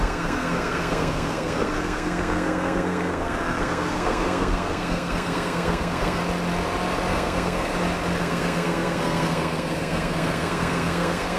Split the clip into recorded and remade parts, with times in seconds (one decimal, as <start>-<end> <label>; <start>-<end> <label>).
0.0-6.2 remade; 6.2-7.1 recorded; 7.1-7.7 remade; 7.7-8.2 recorded; 8.2-11.4 remade